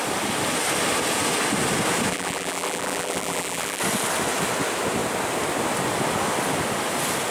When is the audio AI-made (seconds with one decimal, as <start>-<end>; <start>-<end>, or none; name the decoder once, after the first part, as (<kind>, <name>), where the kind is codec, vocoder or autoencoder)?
2.1-3.8 (vocoder, BigVGAN v2)